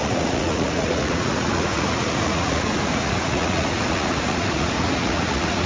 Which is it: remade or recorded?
remade